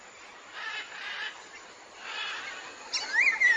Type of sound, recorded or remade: recorded